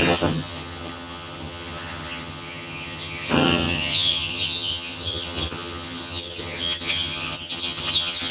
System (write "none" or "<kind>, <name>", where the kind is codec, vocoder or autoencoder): vocoder, HiFi-GAN